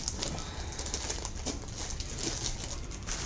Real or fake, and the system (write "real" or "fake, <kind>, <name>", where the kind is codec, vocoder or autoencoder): real